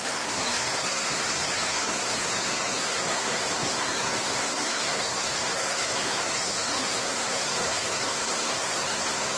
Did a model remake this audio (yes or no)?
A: yes